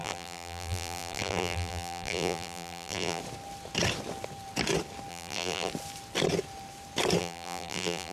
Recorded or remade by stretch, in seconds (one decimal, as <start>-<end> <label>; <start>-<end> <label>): 0.0-3.2 remade; 3.2-5.1 recorded; 5.1-5.7 remade; 5.7-7.2 recorded; 7.2-8.1 remade